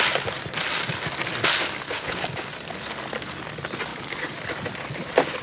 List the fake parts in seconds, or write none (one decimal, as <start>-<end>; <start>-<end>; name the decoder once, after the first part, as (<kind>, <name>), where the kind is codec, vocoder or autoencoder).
1.6-2.5 (codec, DAC); 3.9-4.4